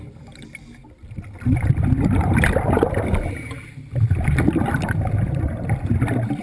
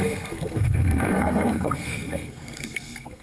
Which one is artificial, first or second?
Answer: second